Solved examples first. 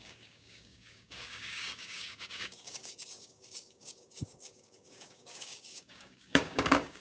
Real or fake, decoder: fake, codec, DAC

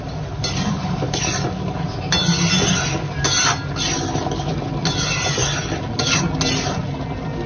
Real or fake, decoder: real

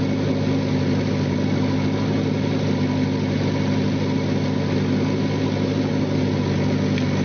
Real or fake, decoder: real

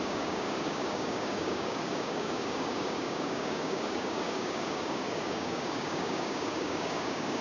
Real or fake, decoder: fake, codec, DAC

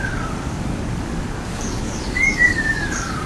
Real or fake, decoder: fake, codec, DAC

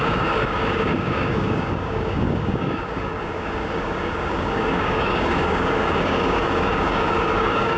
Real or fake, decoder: fake, codec, DAC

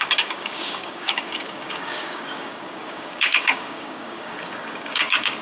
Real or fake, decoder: fake, codec, DAC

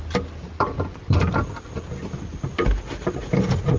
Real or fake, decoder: real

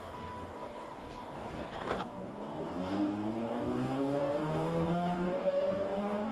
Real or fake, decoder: fake, codec, DAC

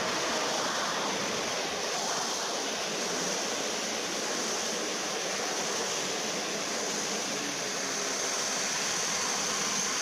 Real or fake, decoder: real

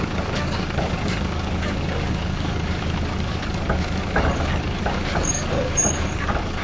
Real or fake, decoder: fake, codec, DAC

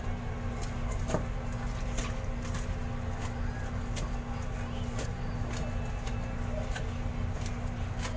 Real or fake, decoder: real